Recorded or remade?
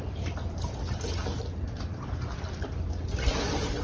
recorded